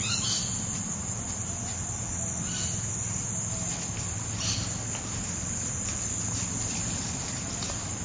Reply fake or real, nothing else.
real